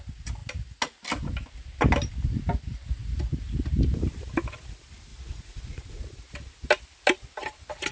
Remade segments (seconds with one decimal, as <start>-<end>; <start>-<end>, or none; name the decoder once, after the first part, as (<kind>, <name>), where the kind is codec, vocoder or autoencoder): 5.1-6.0 (vocoder, Vocos)